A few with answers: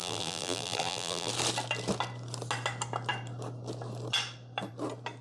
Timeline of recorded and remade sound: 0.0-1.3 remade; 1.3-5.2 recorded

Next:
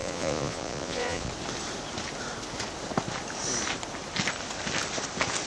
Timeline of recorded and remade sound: 0.0-1.3 remade; 1.3-5.5 recorded

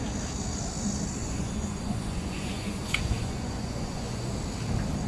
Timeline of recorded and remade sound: 0.0-1.2 recorded; 1.2-4.3 remade; 4.3-5.1 recorded

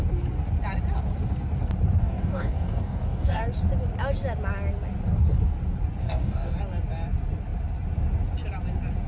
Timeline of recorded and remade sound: 0.0-2.0 recorded; 2.0-3.4 remade; 3.4-6.0 recorded; 6.0-6.5 remade; 6.5-9.1 recorded

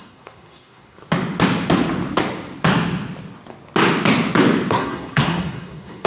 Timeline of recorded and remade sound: 0.0-1.0 remade; 1.0-4.7 recorded; 4.7-6.1 remade

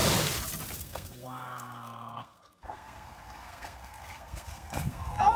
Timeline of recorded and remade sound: 0.0-0.8 recorded; 0.8-5.4 remade